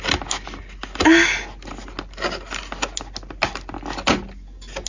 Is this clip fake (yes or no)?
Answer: no